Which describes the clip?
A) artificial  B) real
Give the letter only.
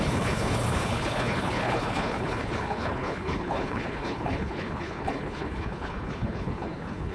A